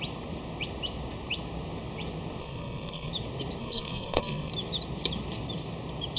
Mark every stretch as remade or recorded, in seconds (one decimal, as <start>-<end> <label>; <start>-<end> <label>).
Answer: 0.0-2.4 recorded; 2.4-3.1 remade; 3.1-3.6 recorded; 3.6-4.5 remade; 4.5-6.2 recorded